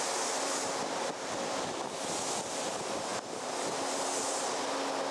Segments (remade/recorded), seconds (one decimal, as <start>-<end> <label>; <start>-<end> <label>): 0.0-5.1 recorded